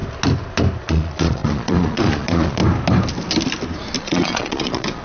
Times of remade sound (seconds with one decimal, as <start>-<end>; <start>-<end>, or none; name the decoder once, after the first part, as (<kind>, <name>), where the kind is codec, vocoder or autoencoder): 0.8-2.6 (vocoder, Vocos); 4.0-5.0